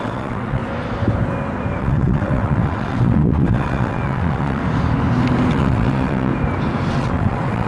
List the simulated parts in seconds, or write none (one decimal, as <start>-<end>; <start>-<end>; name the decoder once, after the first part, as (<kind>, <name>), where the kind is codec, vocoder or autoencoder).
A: 0.0-0.6 (vocoder, WaveNeXt); 1.8-4.6; 5.5-6.3; 6.9-7.7